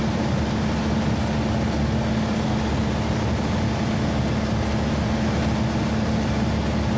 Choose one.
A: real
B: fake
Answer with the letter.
A